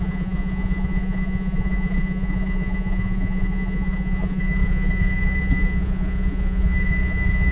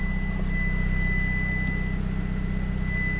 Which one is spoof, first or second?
first